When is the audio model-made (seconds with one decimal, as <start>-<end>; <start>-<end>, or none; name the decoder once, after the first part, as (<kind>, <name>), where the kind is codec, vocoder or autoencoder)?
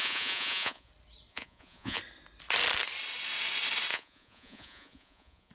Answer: 0.0-0.9 (vocoder, Vocos); 1.3-2.0; 3.9-5.5